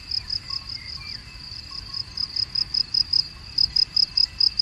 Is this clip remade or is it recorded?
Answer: recorded